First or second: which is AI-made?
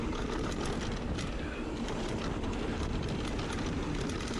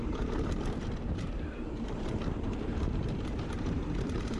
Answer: second